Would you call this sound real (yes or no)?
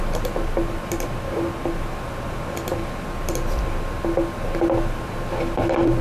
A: yes